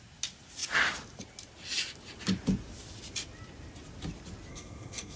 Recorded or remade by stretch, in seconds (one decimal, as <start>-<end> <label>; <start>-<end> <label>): 0.0-4.5 recorded; 4.5-5.2 remade